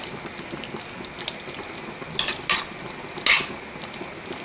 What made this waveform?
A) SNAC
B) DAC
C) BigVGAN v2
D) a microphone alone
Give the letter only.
D